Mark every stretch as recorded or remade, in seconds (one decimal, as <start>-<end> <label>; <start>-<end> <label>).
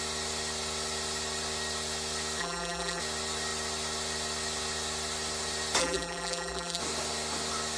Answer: 0.0-2.4 recorded; 2.4-3.0 remade; 3.0-5.8 recorded; 5.8-6.8 remade; 6.8-7.8 recorded